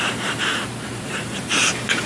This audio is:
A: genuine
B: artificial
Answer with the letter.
B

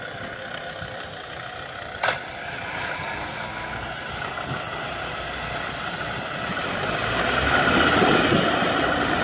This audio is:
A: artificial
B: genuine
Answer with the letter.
B